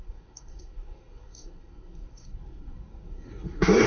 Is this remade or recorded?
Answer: remade